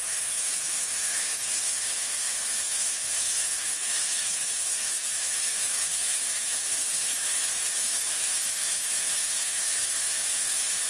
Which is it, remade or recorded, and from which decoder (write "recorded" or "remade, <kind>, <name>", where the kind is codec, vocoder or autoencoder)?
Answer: remade, autoencoder, DAC-VAE